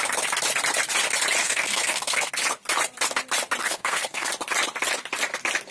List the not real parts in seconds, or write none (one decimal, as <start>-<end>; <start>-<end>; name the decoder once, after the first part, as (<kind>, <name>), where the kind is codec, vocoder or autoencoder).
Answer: 1.4-2.3 (codec, SNAC); 3.6-4.3